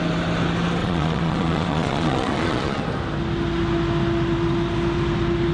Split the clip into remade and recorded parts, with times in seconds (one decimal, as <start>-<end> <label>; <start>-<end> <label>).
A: 0.0-0.8 recorded; 0.8-2.8 remade; 2.8-5.5 recorded